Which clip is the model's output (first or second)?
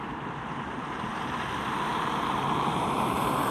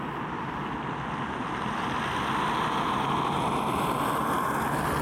first